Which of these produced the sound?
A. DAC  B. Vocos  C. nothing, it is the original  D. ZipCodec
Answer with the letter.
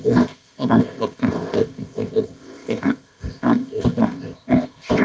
D